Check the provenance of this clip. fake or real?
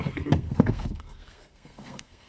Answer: fake